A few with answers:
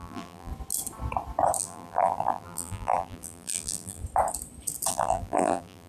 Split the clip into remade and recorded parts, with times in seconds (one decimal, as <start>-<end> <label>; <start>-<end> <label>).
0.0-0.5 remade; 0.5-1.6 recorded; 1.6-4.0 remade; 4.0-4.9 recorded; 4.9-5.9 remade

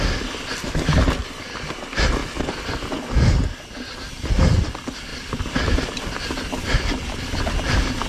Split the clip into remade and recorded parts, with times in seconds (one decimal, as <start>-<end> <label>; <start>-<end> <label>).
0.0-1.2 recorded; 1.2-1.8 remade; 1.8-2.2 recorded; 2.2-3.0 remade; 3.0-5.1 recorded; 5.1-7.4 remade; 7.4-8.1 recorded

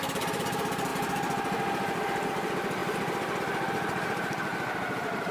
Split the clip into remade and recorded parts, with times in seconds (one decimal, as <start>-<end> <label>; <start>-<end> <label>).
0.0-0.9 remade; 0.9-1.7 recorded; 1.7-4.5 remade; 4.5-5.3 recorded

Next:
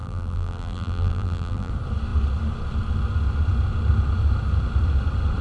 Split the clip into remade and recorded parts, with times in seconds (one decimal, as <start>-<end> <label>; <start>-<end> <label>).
0.0-1.7 remade; 1.7-5.4 recorded

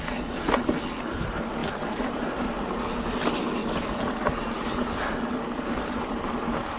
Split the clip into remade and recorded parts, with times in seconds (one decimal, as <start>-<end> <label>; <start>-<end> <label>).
0.0-1.6 recorded; 1.6-2.8 remade; 2.8-3.6 recorded; 3.6-5.2 remade; 5.2-6.8 recorded

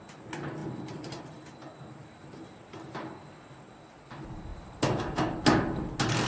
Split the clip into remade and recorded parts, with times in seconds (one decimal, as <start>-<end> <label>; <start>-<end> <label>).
0.0-0.6 recorded; 0.6-1.2 remade; 1.2-2.0 recorded; 2.0-2.7 remade; 2.7-4.5 recorded; 4.5-5.0 remade; 5.0-6.3 recorded

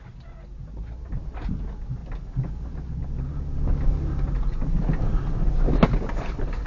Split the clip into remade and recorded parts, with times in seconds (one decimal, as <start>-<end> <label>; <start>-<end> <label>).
0.0-6.7 recorded